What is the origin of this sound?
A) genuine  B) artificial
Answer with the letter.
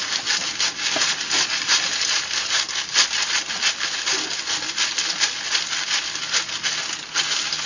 A